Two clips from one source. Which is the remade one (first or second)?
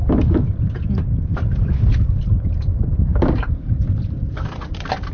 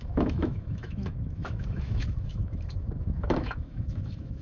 second